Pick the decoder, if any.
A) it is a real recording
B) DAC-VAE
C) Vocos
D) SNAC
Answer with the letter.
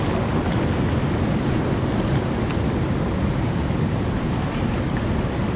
A